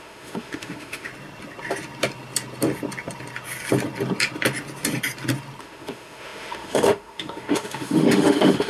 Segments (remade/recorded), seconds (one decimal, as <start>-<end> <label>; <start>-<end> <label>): 0.0-1.1 remade; 1.1-5.6 recorded; 5.6-8.7 remade